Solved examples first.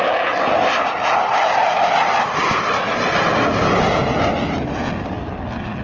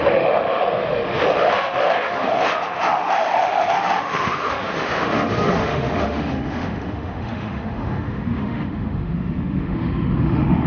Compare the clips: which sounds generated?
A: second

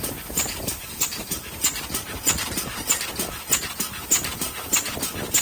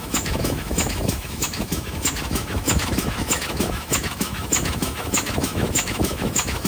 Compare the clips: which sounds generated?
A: second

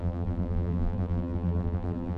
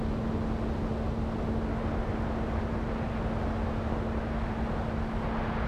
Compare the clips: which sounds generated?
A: first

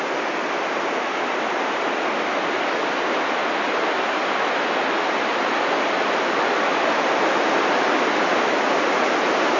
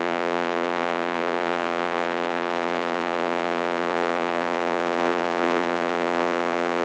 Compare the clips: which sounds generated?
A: second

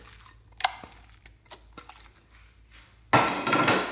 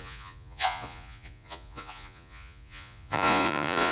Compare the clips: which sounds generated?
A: second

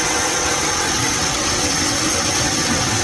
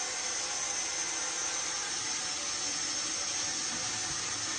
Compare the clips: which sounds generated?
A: first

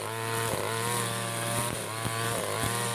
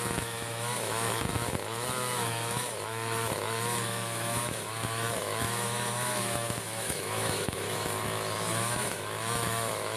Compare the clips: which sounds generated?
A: second